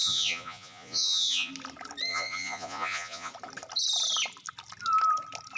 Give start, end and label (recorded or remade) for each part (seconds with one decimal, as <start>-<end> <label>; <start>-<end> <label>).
0.0-1.5 remade; 1.5-2.1 recorded; 2.1-3.3 remade; 3.3-5.6 recorded

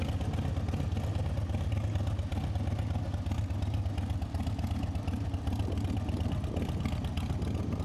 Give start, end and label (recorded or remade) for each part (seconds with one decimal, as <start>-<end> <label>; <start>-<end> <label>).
0.0-7.8 recorded

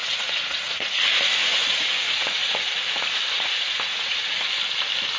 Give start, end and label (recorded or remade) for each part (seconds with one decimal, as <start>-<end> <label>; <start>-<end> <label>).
0.0-0.9 remade; 0.9-1.4 recorded; 1.4-4.5 remade; 4.5-5.2 recorded

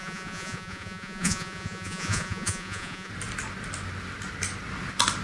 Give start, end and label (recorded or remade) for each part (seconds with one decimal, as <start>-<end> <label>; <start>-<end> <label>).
0.0-3.1 remade; 3.1-5.2 recorded